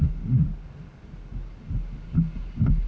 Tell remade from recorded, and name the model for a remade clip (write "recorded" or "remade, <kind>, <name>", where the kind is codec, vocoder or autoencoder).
recorded